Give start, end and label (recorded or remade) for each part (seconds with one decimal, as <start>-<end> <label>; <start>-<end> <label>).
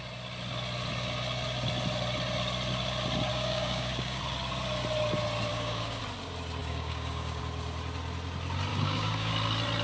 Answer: 0.0-3.3 recorded; 3.3-4.2 remade; 4.2-5.5 recorded; 5.5-6.0 remade; 6.0-6.6 recorded; 6.6-7.4 remade; 7.4-8.7 recorded; 8.7-9.3 remade; 9.3-9.8 recorded